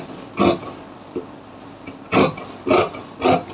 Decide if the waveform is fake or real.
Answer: real